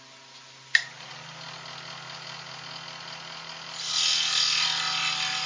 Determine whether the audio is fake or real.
real